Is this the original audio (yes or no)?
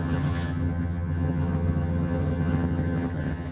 no